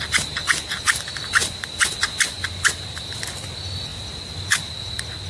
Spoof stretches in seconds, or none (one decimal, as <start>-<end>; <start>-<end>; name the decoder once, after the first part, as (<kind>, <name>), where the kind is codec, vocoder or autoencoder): none